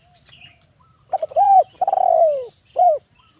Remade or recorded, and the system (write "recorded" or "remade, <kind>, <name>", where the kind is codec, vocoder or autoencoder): remade, vocoder, BigVGAN v2